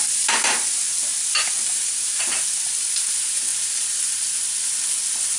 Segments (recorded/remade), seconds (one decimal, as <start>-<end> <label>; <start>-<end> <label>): 0.0-3.5 recorded; 3.5-4.2 remade; 4.2-5.4 recorded

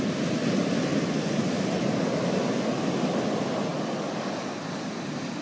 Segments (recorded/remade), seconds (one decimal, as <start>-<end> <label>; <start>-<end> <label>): 0.0-5.4 recorded

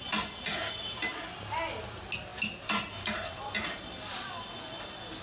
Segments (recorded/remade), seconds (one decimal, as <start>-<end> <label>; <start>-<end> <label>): 0.0-5.2 recorded

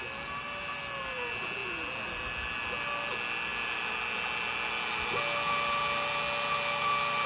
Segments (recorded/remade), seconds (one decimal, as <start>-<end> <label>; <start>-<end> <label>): 0.0-7.3 recorded